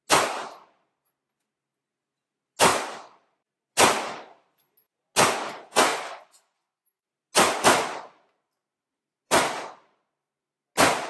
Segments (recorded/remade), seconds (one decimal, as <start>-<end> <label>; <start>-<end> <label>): 0.0-5.9 recorded; 5.9-7.1 remade; 7.1-11.1 recorded